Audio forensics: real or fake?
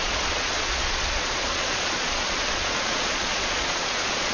fake